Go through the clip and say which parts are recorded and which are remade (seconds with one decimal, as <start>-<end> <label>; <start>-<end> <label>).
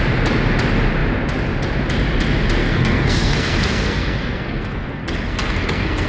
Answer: 0.0-2.6 recorded; 2.6-6.1 remade